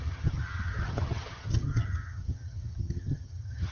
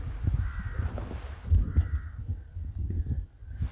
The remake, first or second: first